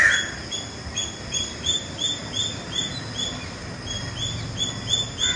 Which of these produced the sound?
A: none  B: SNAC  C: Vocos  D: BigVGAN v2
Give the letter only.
A